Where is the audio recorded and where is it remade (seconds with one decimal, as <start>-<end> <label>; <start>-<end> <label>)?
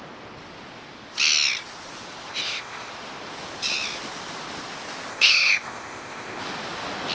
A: 0.0-2.3 recorded; 2.3-2.9 remade; 2.9-5.1 recorded; 5.1-6.4 remade; 6.4-7.1 recorded